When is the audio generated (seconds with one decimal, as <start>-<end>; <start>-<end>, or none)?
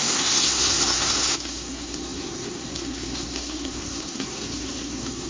0.0-5.3